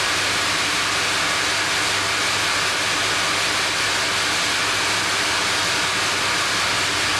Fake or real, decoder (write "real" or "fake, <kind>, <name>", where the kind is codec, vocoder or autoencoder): real